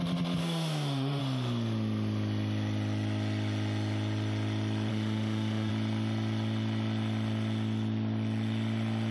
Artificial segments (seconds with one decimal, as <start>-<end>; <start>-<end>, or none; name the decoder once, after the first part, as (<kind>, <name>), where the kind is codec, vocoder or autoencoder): 0.4-1.2 (autoencoder, DAC-VAE); 4.9-5.7